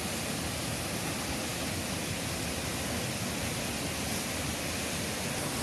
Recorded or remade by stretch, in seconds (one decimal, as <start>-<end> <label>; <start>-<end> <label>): 0.0-5.6 recorded